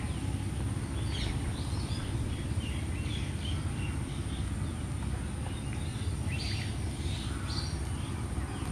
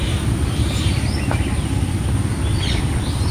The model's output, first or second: second